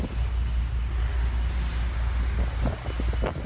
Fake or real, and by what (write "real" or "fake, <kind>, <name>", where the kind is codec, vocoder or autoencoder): real